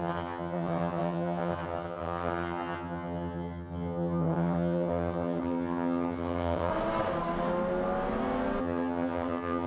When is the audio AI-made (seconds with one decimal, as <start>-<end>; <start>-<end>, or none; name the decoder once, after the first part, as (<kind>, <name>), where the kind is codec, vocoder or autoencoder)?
0.0-6.7 (vocoder, HiFi-GAN); 8.6-9.7